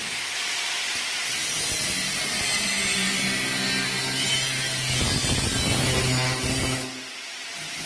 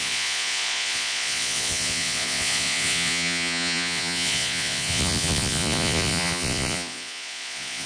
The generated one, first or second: second